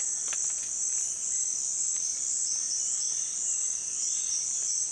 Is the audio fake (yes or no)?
no